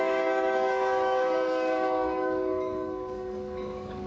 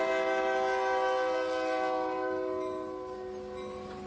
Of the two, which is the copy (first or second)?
first